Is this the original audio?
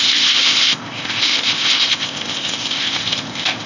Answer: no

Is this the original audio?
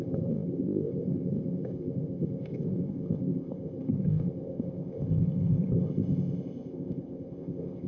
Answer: no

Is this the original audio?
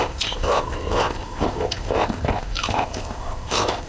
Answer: no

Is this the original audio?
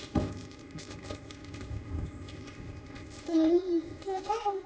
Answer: no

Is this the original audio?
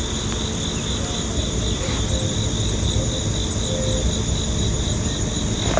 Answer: yes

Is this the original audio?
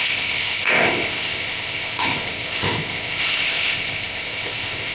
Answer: no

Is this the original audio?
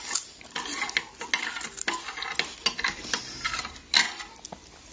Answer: yes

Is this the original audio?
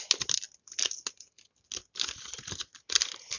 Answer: yes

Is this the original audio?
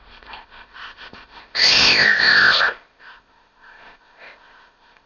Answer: no